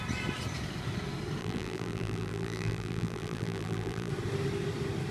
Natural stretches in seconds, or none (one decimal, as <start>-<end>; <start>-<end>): 0.0-1.4; 4.1-5.1